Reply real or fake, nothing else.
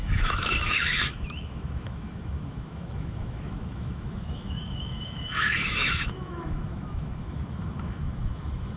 fake